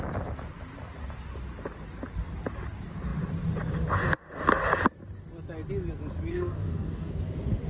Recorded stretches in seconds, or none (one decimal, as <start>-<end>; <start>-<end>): 0.0-6.3; 7.1-7.7